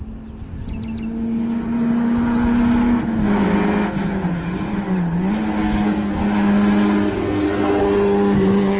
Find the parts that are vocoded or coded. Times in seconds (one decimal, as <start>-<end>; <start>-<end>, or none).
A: 5.6-6.1; 7.2-7.8